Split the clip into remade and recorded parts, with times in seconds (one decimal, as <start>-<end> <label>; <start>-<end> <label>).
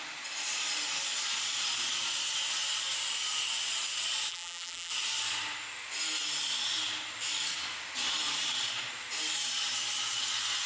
0.0-4.3 recorded; 4.3-4.9 remade; 4.9-10.7 recorded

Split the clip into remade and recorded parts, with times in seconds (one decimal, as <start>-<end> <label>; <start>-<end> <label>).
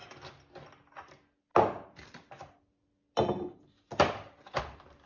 0.0-5.1 recorded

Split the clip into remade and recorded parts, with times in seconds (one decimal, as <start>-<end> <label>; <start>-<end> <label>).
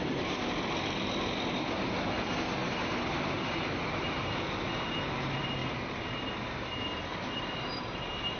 0.0-8.4 remade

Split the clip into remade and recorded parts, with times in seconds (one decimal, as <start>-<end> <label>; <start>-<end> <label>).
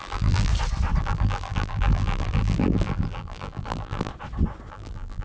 0.0-0.5 remade; 0.5-1.0 recorded; 1.0-4.1 remade; 4.1-4.7 recorded; 4.7-5.2 remade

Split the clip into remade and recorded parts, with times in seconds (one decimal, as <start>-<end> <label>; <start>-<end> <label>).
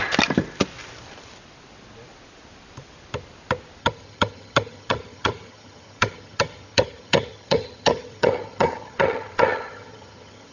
0.0-3.8 recorded; 3.8-10.5 remade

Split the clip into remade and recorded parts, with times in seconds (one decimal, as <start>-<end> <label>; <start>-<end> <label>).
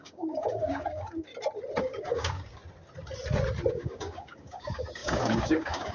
0.0-1.3 remade; 1.3-1.8 recorded; 1.8-2.6 remade; 2.6-3.7 recorded; 3.7-5.9 remade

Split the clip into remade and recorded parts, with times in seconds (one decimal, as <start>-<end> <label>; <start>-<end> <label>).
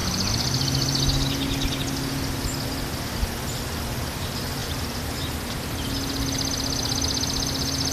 0.0-4.6 recorded; 4.6-5.3 remade; 5.3-7.9 recorded